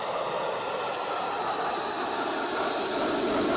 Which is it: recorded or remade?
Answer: recorded